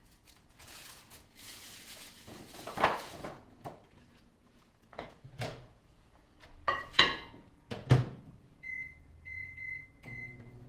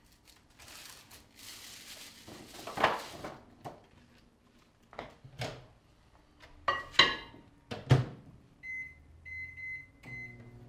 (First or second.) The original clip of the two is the second